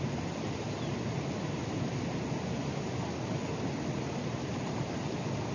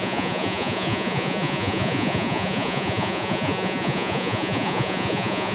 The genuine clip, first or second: first